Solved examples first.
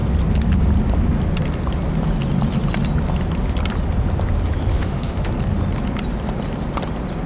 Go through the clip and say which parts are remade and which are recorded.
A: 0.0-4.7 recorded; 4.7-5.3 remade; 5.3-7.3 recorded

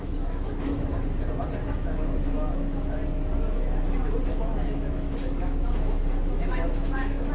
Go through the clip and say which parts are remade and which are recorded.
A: 0.0-0.9 remade; 0.9-1.7 recorded; 1.7-3.0 remade; 3.0-4.3 recorded; 4.3-7.3 remade

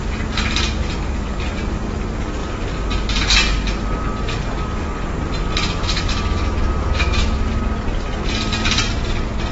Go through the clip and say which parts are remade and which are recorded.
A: 0.0-5.6 recorded; 5.6-7.5 remade; 7.5-9.5 recorded

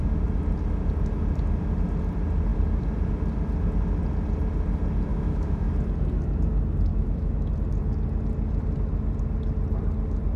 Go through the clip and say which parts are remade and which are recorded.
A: 0.0-5.1 recorded; 5.1-5.7 remade; 5.7-6.9 recorded; 6.9-7.5 remade; 7.5-10.4 recorded

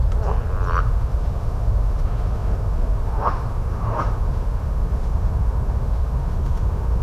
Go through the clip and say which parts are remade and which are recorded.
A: 0.0-0.8 recorded; 0.8-7.0 remade

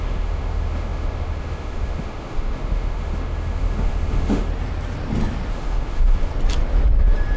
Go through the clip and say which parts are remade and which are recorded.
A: 0.0-4.5 remade; 4.5-5.5 recorded; 5.5-6.3 remade; 6.3-7.4 recorded